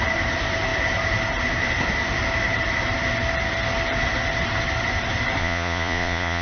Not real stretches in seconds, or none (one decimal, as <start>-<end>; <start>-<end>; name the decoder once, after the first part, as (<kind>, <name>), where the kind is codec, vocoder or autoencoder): 5.4-6.4 (vocoder, Vocos)